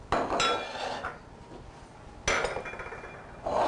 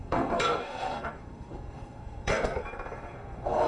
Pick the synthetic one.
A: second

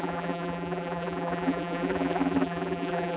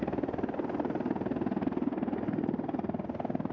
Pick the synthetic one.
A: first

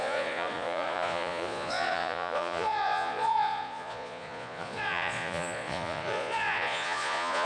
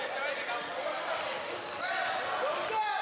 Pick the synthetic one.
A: first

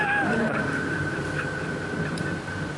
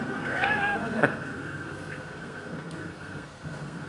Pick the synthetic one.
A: second